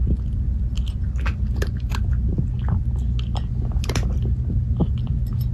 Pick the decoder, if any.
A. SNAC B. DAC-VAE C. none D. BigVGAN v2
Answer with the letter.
C